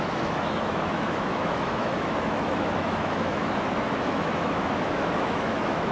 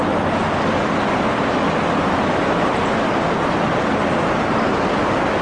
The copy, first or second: first